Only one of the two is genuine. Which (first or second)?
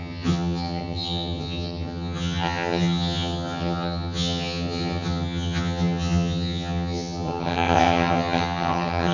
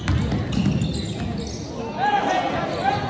second